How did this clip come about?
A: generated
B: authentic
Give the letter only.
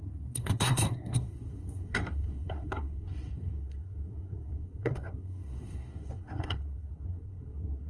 A